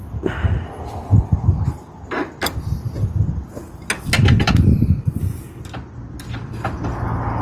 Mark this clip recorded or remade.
recorded